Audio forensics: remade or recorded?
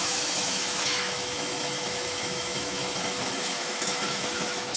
remade